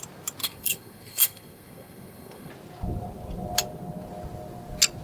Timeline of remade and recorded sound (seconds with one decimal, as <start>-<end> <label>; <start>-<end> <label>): 0.0-0.4 recorded; 0.4-2.5 remade; 2.5-5.0 recorded